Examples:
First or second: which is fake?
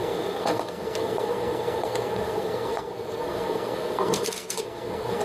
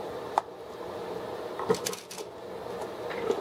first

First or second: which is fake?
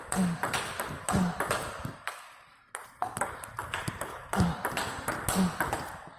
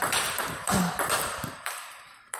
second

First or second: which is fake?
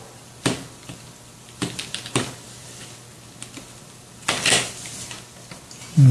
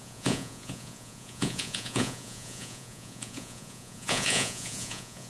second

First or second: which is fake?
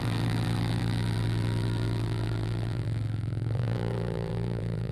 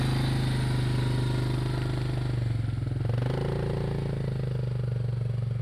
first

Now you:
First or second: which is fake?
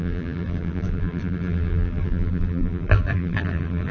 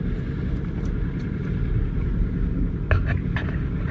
first